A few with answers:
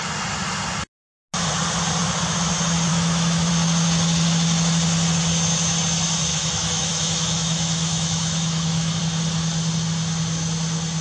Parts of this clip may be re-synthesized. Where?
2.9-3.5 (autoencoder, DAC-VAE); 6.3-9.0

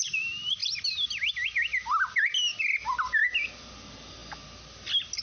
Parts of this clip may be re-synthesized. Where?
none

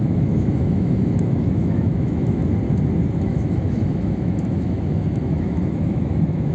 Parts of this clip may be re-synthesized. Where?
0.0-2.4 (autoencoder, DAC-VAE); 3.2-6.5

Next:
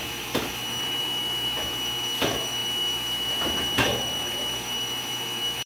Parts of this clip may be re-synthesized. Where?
0.0-5.7 (autoencoder, DAC-VAE)

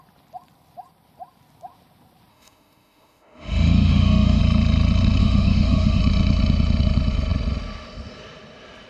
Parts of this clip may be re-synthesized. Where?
2.3-4.4 (autoencoder, DAC-VAE); 5.2-6.0

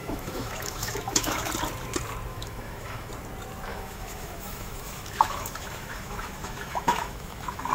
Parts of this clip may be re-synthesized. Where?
0.0-1.5 (autoencoder, DAC-VAE); 2.3-3.1; 3.7-7.7

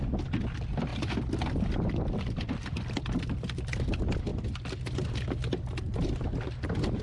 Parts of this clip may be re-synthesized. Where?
none

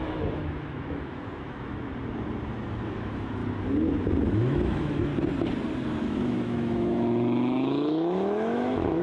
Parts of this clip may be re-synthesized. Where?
0.0-1.9 (autoencoder, DAC-VAE); 3.0-3.4; 4.3-5.1; 6.0-9.0